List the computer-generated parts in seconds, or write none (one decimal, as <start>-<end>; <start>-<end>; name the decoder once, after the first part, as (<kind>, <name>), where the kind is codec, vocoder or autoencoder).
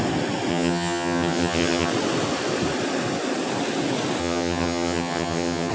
0.5-1.9 (vocoder, HiFi-GAN); 4.2-5.7